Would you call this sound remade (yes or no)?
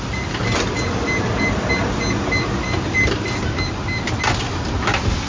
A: no